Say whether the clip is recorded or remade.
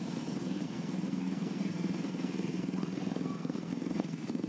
remade